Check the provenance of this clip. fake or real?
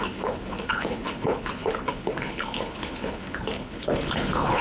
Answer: fake